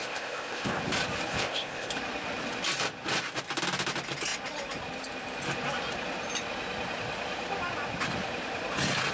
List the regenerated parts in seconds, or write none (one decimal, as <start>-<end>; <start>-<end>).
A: 0.0-0.8; 1.3-1.9